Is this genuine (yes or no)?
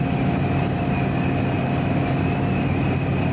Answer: yes